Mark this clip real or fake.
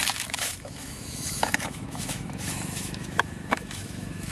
fake